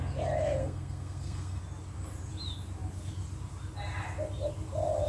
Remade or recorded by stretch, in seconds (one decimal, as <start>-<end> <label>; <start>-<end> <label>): 0.0-0.6 recorded; 0.6-1.6 remade; 1.6-5.1 recorded